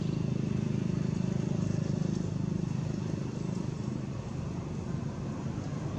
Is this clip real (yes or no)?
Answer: yes